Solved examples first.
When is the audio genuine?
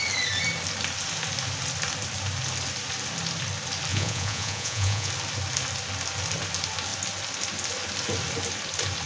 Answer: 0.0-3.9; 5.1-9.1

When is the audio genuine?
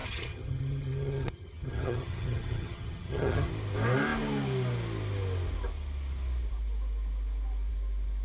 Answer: 3.5-8.2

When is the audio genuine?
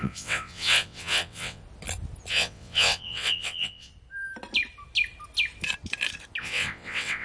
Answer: 1.6-2.3; 3.9-6.4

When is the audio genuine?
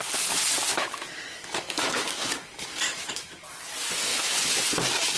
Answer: 0.0-0.7; 3.4-4.1; 4.6-5.2